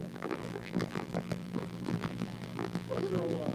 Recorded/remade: remade